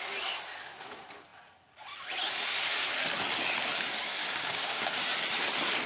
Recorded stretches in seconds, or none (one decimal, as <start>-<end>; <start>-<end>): 0.0-4.2; 5.0-5.9